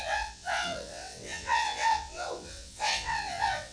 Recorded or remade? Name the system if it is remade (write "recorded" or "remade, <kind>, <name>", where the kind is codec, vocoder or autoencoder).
remade, vocoder, WaveNeXt